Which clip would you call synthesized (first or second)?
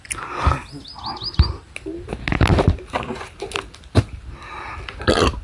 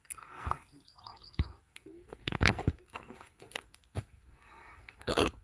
second